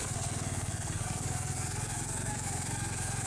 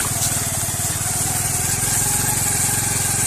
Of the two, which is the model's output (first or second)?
first